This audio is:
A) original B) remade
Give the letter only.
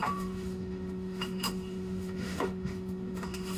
B